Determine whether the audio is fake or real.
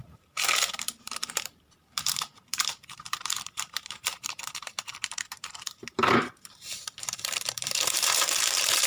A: fake